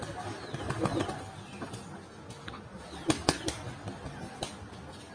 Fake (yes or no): no